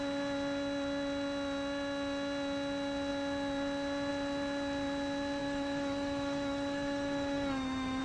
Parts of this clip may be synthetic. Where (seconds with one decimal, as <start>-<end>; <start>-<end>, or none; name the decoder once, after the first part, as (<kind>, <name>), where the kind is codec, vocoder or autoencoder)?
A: 5.4-8.0 (autoencoder, DAC-VAE)